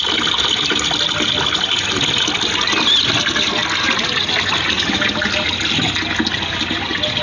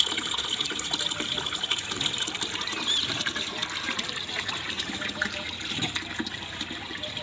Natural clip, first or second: first